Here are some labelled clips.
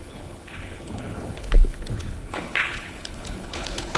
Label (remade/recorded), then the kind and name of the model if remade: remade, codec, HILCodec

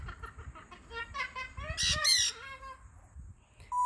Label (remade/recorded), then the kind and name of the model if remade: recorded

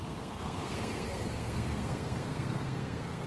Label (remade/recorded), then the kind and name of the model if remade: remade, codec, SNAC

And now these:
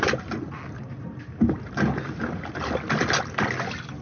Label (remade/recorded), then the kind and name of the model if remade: recorded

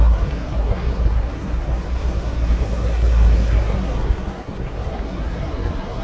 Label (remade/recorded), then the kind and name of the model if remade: remade, codec, SNAC